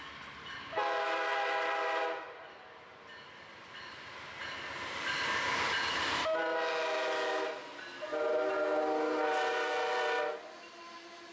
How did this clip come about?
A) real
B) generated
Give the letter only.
A